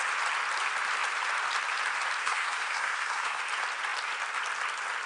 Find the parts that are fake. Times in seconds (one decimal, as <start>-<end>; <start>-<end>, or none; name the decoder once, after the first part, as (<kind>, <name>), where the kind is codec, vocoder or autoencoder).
2.2-3.4 (codec, SNAC)